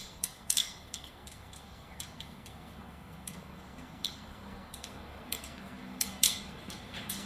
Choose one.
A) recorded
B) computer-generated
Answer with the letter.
B